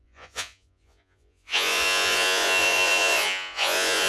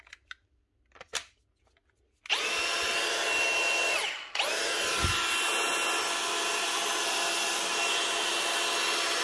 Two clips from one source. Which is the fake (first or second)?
first